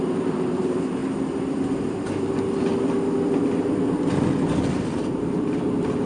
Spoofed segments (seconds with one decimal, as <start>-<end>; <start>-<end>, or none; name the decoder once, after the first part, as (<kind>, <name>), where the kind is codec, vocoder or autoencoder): 0.0-1.0 (vocoder, BigVGAN v2); 4.7-6.1